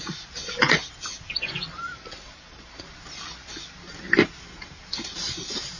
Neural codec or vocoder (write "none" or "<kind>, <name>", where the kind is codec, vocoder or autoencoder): none